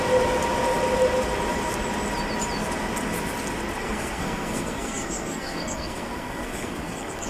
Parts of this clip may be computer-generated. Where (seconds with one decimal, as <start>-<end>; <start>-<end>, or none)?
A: 3.8-7.3